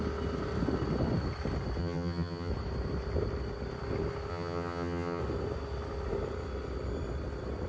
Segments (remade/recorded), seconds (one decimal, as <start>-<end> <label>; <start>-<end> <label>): 0.0-1.8 recorded; 1.8-2.5 remade; 2.5-4.3 recorded; 4.3-5.2 remade; 5.2-7.7 recorded